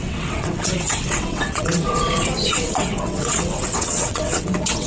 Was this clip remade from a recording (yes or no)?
yes